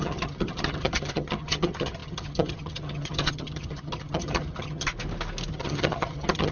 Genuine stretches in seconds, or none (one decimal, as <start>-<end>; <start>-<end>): 4.9-5.5